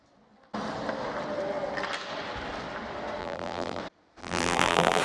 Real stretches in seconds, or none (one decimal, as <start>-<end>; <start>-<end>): 0.0-3.2; 3.8-4.2